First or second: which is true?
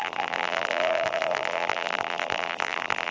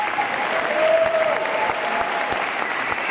second